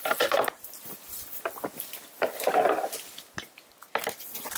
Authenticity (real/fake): real